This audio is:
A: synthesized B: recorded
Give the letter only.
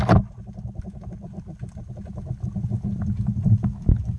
B